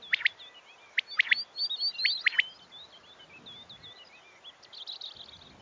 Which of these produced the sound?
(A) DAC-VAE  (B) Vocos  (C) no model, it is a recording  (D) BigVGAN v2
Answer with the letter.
C